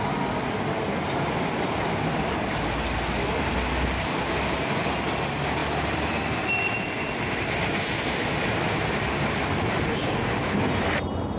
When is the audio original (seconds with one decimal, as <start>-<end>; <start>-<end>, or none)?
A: 0.0-11.4